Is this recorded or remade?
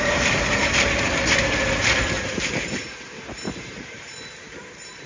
remade